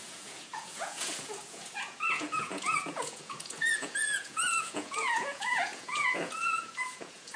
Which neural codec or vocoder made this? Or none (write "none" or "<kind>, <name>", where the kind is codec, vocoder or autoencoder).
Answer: vocoder, Vocos